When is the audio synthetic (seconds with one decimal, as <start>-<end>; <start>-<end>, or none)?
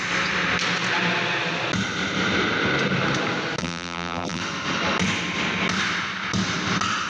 3.6-4.4